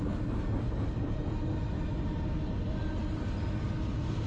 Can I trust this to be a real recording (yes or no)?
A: yes